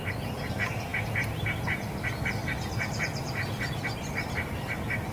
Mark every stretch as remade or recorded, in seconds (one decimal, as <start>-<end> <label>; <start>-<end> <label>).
0.0-5.1 recorded